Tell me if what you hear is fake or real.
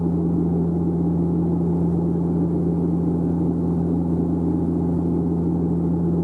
real